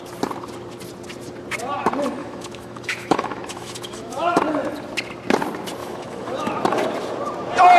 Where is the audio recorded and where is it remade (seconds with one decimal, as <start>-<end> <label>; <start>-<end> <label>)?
0.0-2.2 recorded; 2.2-4.4 remade; 4.4-5.8 recorded; 5.8-6.5 remade; 6.5-7.8 recorded